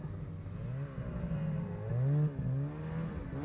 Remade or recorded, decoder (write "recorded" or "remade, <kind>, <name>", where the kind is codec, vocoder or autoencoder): recorded